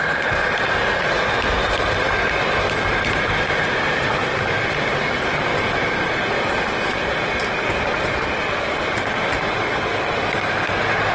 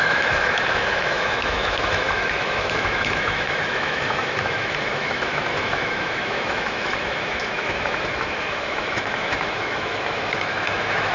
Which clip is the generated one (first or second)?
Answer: second